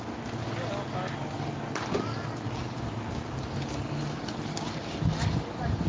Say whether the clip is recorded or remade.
recorded